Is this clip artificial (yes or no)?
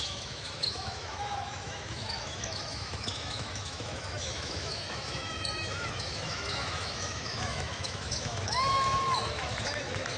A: yes